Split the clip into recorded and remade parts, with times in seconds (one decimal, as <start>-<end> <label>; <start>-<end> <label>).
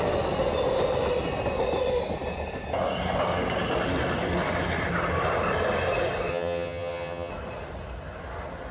0.0-6.3 recorded; 6.3-7.3 remade; 7.3-8.7 recorded